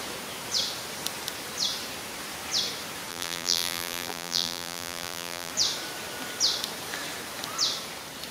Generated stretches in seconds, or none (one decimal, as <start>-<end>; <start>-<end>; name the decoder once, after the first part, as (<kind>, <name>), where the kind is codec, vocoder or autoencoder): 3.1-5.5 (vocoder, BigVGAN v2)